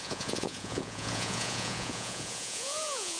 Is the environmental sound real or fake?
fake